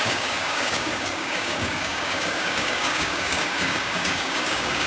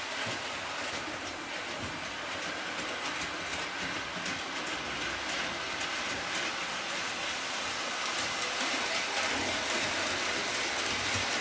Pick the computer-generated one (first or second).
first